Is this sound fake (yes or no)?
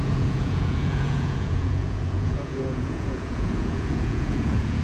yes